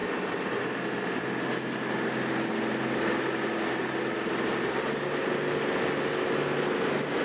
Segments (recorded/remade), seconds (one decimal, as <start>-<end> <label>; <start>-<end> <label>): 0.0-7.2 recorded